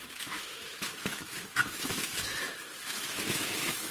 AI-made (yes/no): yes